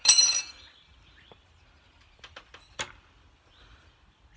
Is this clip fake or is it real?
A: real